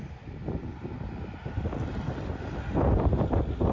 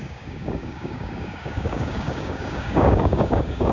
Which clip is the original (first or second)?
first